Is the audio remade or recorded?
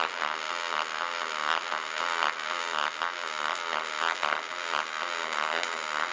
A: recorded